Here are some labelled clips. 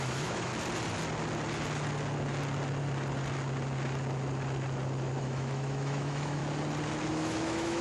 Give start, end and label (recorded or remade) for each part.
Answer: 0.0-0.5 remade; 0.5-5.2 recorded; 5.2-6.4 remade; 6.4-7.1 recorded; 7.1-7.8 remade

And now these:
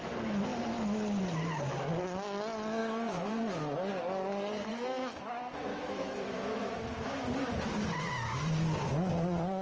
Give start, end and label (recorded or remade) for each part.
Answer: 0.0-2.8 recorded; 2.8-3.3 remade; 3.3-4.7 recorded; 4.7-5.3 remade; 5.3-5.7 recorded; 5.7-6.9 remade; 6.9-9.6 recorded

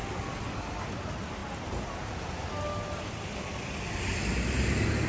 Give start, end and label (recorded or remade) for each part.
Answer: 0.0-5.1 recorded

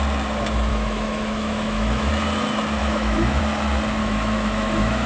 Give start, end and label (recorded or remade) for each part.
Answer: 0.0-0.7 recorded; 0.7-2.1 remade; 2.1-2.8 recorded; 2.8-3.4 remade; 3.4-4.0 recorded; 4.0-5.1 remade

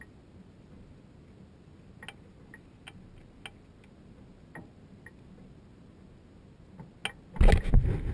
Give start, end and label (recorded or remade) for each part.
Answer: 0.0-8.1 recorded

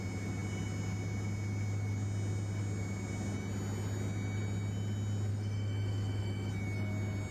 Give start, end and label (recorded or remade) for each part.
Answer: 0.0-5.3 recorded; 5.3-6.5 remade; 6.5-7.3 recorded